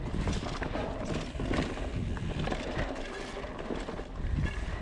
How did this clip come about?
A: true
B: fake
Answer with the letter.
A